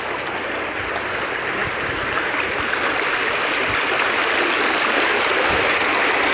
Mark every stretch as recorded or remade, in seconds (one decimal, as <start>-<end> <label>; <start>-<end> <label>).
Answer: 0.0-6.3 recorded